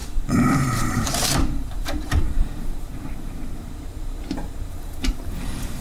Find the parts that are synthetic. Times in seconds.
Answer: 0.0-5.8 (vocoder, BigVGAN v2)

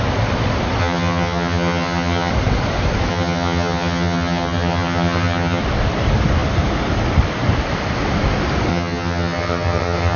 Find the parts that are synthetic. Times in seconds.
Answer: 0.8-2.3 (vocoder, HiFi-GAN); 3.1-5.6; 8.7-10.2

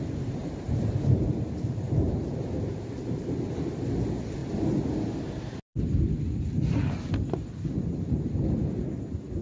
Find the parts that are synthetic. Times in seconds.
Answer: 0.4-3.6 (vocoder, BigVGAN v2)

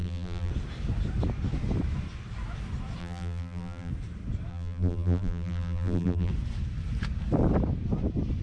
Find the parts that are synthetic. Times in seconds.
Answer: 0.0-0.5 (vocoder, BigVGAN v2); 3.0-3.9; 4.5-6.3

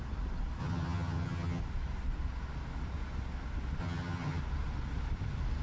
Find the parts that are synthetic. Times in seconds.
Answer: 0.6-1.6 (vocoder, HiFi-GAN); 3.8-4.4

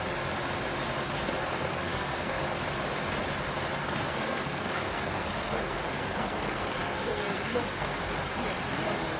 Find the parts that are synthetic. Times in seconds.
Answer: 1.5-2.4 (codec, SNAC); 3.8-8.0